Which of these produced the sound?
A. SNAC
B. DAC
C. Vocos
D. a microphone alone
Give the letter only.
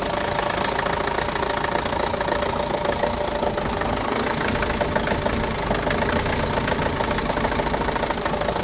D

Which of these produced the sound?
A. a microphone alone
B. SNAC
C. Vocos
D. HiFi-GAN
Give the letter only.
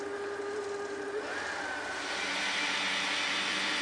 A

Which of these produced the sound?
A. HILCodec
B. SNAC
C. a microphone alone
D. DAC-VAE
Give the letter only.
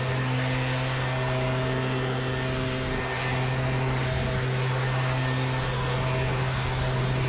C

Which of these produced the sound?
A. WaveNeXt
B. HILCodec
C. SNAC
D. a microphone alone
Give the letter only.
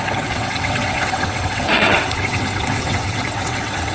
A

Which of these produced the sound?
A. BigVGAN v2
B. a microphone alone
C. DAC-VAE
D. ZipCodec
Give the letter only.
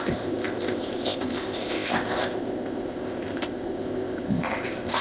D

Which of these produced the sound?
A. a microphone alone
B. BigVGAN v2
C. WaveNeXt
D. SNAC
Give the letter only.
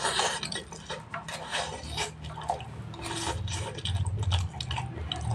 A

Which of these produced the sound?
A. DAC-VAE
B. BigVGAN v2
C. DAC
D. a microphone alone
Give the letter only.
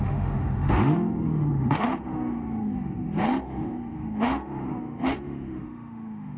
A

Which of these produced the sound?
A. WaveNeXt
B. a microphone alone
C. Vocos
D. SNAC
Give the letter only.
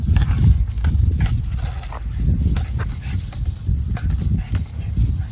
B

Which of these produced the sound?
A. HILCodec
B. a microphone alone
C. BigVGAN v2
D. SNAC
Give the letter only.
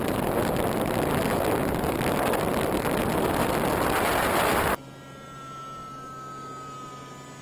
B